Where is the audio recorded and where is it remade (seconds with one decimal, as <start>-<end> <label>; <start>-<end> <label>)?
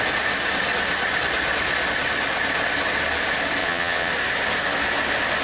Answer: 0.0-3.6 recorded; 3.6-4.1 remade; 4.1-5.4 recorded